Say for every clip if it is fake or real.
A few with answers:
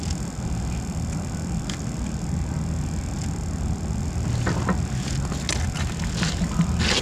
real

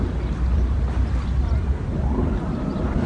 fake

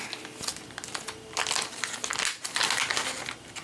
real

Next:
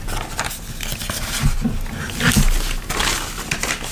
fake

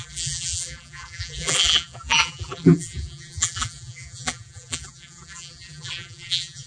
fake